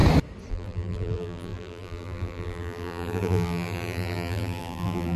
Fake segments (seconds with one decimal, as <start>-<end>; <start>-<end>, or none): 0.5-5.2